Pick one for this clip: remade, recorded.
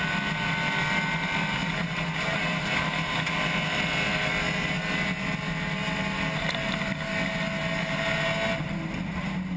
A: recorded